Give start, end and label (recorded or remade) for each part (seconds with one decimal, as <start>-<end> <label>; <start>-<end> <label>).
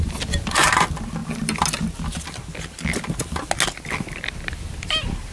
0.0-5.3 recorded